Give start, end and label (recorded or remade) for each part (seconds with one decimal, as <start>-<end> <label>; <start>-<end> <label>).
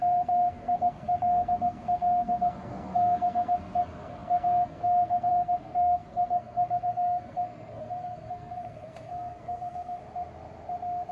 0.0-10.0 remade; 10.0-11.1 recorded